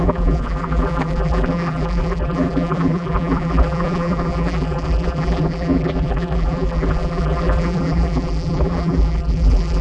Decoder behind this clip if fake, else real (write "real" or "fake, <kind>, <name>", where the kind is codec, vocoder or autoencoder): fake, vocoder, BigVGAN v2